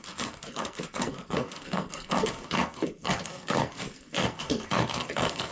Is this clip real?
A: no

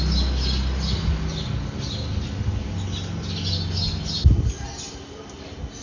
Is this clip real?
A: yes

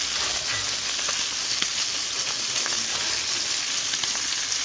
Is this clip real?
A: yes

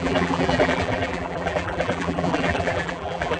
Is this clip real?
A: no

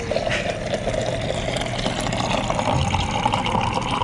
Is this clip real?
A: yes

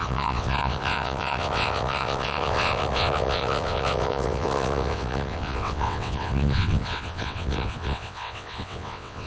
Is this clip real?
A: no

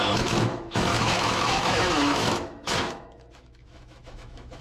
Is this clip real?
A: no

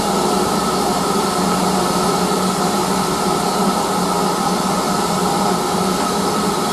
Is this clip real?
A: yes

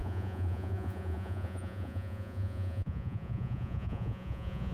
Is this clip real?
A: no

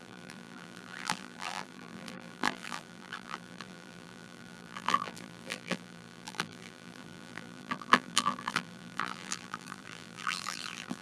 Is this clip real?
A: no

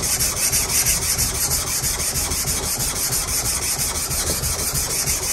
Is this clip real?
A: no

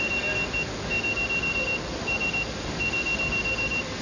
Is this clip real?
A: yes